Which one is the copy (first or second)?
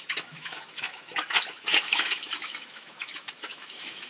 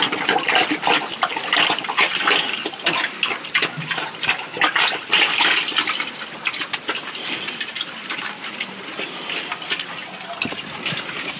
first